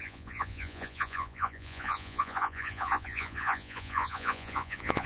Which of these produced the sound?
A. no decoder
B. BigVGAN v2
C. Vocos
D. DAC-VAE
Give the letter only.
C